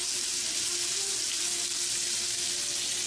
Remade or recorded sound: recorded